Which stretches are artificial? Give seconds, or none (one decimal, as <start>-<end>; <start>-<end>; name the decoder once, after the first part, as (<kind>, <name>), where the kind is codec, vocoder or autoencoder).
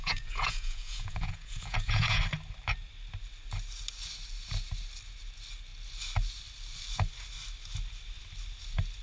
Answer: 0.0-2.2 (vocoder, Vocos)